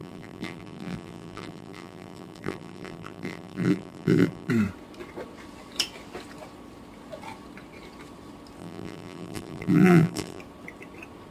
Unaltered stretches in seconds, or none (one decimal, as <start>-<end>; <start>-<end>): 4.5-8.6; 10.4-11.3